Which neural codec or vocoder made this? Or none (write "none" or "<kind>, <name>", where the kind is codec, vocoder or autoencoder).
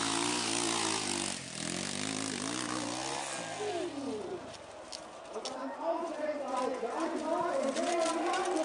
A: none